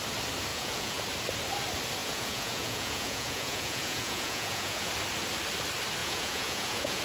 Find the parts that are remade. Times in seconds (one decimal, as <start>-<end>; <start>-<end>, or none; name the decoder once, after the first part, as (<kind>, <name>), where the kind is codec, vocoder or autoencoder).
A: 0.5-1.0 (vocoder, Vocos); 2.0-4.9; 6.0-7.0